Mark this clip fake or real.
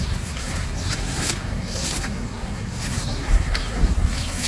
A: fake